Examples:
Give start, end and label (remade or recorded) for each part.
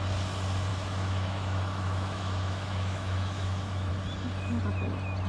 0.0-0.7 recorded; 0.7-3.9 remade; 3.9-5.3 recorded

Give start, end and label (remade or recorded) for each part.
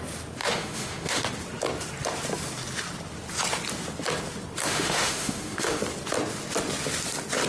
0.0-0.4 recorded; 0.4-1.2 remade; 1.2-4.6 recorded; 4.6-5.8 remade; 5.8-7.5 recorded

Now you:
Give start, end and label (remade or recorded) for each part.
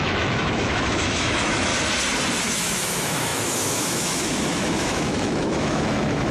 0.0-1.7 remade; 1.7-2.4 recorded; 2.4-6.3 remade